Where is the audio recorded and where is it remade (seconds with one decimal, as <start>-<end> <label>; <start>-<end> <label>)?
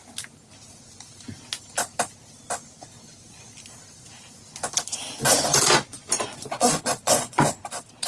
0.0-5.5 recorded; 5.5-7.5 remade; 7.5-8.1 recorded